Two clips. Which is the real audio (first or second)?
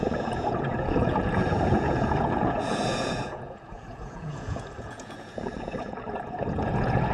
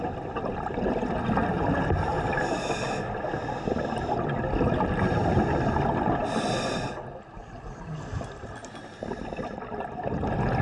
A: second